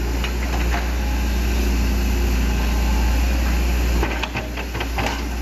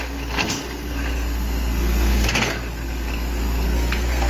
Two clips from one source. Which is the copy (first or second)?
second